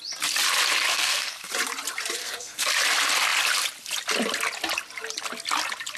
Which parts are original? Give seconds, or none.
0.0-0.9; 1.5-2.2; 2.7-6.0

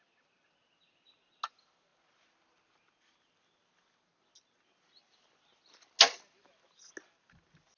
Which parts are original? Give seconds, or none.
0.0-7.8

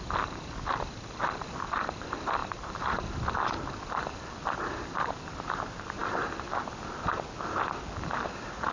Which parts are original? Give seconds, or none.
0.0-8.7

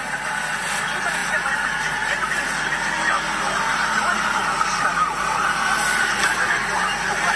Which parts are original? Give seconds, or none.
0.0-7.4

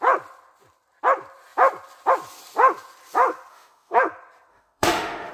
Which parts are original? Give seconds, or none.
0.0-3.5; 4.0-4.5

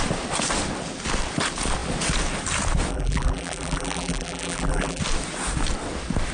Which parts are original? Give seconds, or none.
0.0-2.9; 5.0-6.3

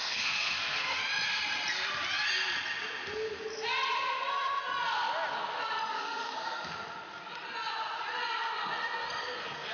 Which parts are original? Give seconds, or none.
1.0-5.9; 6.7-9.2

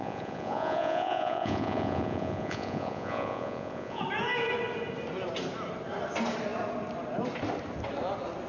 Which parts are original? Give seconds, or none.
4.0-8.5